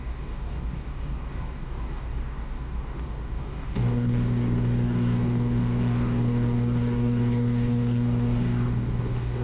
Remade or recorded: remade